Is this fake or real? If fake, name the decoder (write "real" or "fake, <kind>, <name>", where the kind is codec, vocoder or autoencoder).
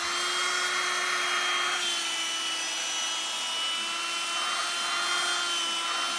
real